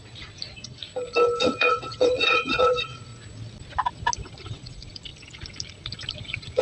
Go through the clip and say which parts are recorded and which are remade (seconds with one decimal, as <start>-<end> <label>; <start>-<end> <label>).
0.0-0.8 remade; 0.8-1.4 recorded; 1.4-3.1 remade; 3.1-4.4 recorded; 4.4-5.1 remade; 5.1-6.1 recorded; 6.1-6.6 remade

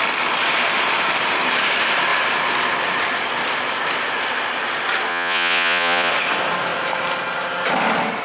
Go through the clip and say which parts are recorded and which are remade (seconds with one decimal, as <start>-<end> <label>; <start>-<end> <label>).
0.0-5.1 recorded; 5.1-6.1 remade; 6.1-8.2 recorded

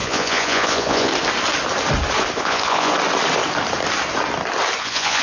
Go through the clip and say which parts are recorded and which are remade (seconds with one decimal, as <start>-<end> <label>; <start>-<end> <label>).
0.0-1.1 remade; 1.1-2.4 recorded; 2.4-2.9 remade; 2.9-4.8 recorded; 4.8-5.2 remade

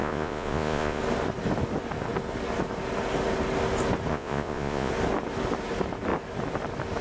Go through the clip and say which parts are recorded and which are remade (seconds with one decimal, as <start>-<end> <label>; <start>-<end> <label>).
0.0-1.0 remade; 1.0-4.1 recorded; 4.1-4.9 remade; 4.9-7.0 recorded

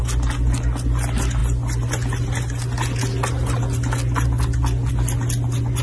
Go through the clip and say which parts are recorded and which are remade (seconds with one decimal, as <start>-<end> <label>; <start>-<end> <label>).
0.0-5.8 recorded

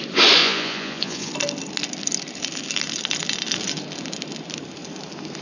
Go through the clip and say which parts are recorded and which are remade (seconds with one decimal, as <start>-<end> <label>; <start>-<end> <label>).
0.0-0.4 recorded; 0.4-1.3 remade; 1.3-5.4 recorded